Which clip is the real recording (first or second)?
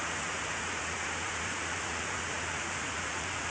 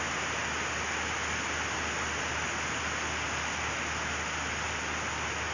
second